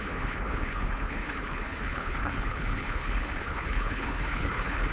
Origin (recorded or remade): remade